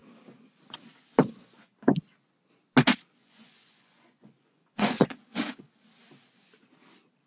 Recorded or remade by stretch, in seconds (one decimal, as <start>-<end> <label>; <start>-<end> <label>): 0.0-3.2 recorded; 3.2-5.7 remade; 5.7-7.3 recorded